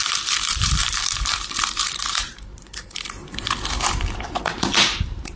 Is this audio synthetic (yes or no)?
yes